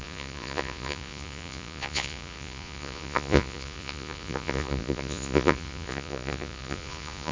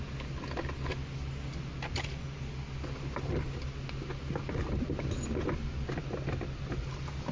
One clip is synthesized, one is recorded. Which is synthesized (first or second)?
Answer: first